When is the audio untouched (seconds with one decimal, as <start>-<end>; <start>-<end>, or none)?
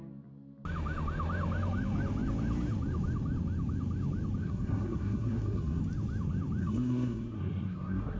0.0-4.4; 5.8-6.6